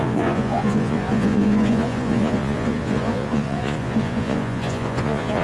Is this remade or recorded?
remade